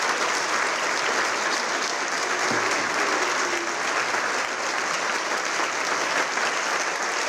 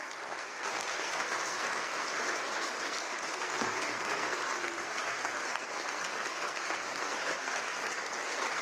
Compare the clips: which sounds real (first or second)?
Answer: first